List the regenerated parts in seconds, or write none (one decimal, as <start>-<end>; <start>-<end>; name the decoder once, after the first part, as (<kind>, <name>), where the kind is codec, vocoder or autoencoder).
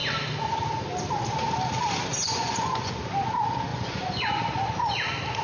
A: 2.1-2.9 (vocoder, Vocos); 3.7-4.4